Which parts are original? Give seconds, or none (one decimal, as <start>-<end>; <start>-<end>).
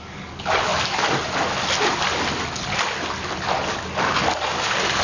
0.7-3.7